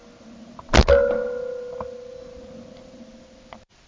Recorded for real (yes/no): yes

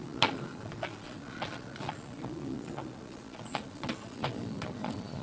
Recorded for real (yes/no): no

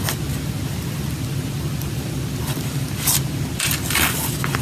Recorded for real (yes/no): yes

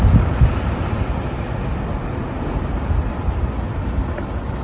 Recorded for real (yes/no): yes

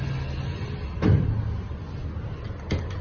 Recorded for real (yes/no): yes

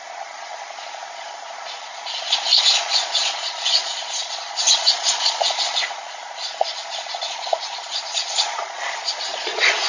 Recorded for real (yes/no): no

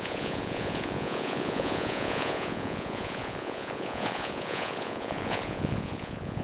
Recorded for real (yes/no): no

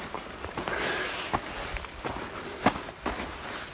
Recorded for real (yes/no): yes